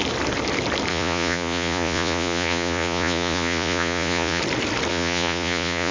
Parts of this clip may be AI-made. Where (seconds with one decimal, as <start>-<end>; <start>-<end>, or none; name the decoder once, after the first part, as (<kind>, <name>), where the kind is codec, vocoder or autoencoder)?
0.9-4.4 (vocoder, Vocos); 4.9-5.9